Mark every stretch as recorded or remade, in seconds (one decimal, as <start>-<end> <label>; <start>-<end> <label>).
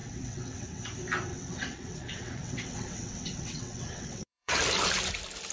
0.0-0.8 remade; 0.8-1.3 recorded; 1.3-4.6 remade; 4.6-5.5 recorded